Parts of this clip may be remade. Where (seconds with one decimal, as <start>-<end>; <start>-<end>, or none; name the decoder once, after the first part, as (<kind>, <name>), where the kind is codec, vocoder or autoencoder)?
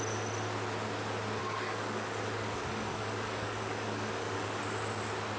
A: 1.4-4.6 (codec, DAC)